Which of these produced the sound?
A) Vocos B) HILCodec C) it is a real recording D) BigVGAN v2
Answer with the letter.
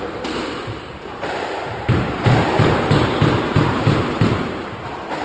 D